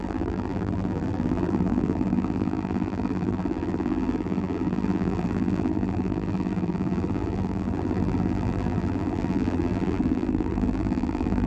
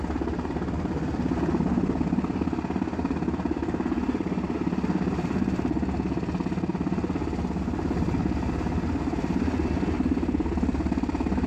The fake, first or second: first